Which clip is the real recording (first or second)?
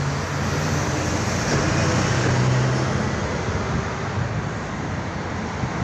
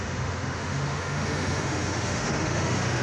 first